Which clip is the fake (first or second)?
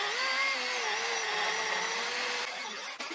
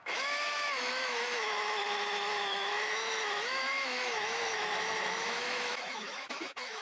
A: second